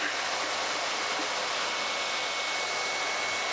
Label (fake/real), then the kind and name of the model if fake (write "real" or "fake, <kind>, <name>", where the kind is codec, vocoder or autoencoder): real